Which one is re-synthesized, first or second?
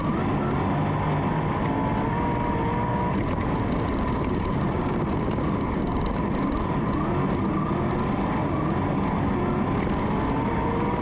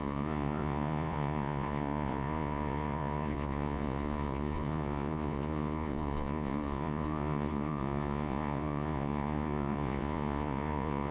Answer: second